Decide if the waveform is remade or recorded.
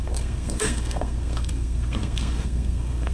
remade